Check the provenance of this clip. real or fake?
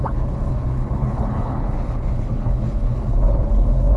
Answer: fake